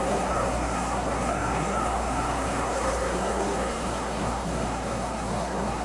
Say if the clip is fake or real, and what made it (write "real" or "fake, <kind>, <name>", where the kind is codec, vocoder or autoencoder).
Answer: fake, codec, SNAC